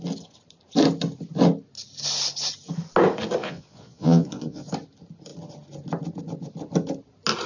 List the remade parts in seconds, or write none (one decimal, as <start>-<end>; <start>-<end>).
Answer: 3.4-4.7